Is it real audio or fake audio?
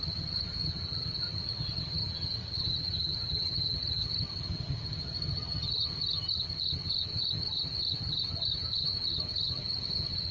fake